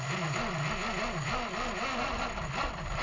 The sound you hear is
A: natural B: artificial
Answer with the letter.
A